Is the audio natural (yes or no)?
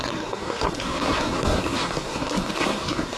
no